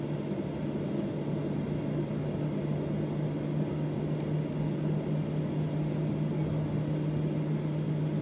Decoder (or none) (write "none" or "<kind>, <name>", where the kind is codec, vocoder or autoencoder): none